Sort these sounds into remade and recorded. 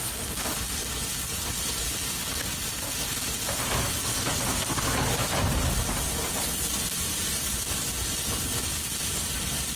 recorded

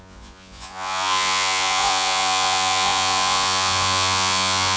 remade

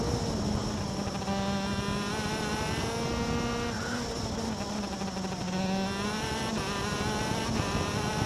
recorded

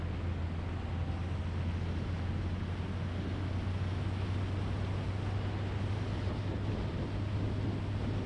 recorded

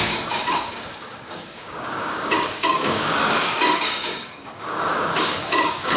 remade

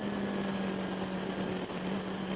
recorded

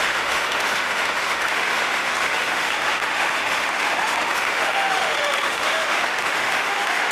remade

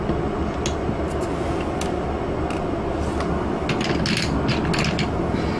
recorded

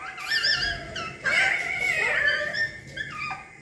recorded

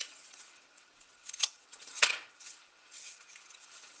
remade